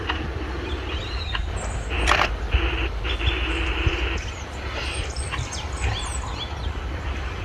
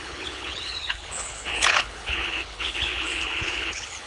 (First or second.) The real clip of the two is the first